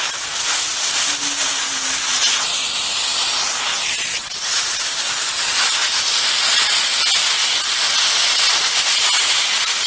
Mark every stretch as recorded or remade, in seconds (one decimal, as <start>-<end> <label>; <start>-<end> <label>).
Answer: 0.0-9.9 recorded